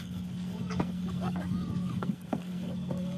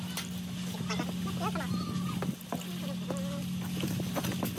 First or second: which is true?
second